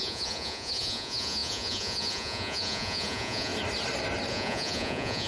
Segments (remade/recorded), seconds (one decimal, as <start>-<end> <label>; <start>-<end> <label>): 0.0-3.5 remade; 3.5-4.3 recorded; 4.3-5.3 remade